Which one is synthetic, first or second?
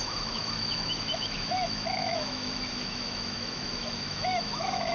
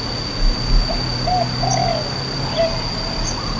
first